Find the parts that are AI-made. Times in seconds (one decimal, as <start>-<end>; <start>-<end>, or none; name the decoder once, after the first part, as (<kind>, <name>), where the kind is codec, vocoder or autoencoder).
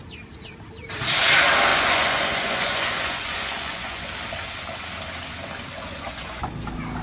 1.7-4.0 (vocoder, Vocos); 5.7-6.5